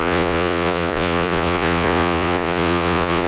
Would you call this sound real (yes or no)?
no